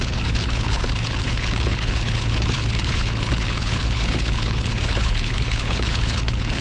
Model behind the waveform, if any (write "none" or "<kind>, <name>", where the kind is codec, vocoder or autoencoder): codec, HILCodec